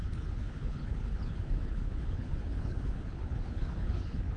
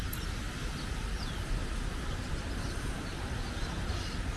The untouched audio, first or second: second